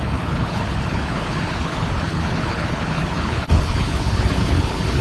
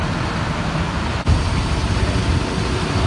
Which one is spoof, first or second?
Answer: first